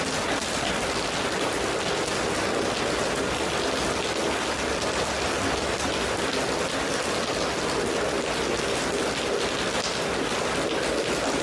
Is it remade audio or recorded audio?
recorded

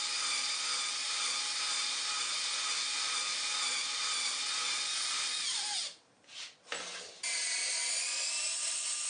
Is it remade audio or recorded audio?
recorded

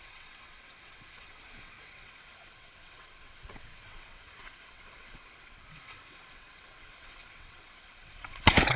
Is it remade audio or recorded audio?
remade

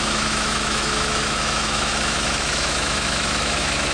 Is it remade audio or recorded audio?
remade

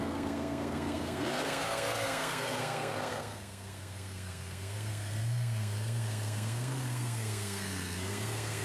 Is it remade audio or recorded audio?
remade